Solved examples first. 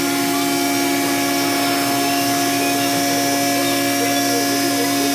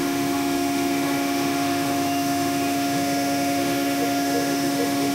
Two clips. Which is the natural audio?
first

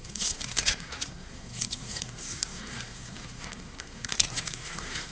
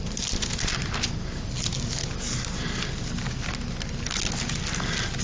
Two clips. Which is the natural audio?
second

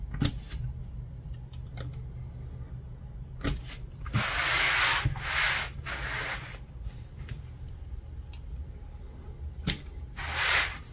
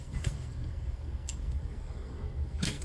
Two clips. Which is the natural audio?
first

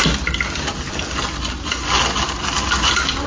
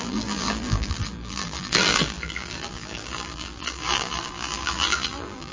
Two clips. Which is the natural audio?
first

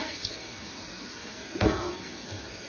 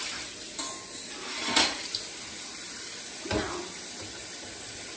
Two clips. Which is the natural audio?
second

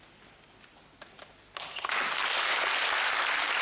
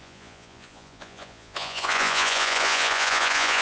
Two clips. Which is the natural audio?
first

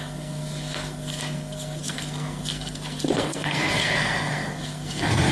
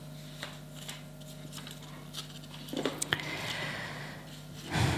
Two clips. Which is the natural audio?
second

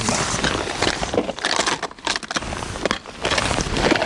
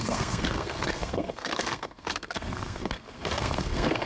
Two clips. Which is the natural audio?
first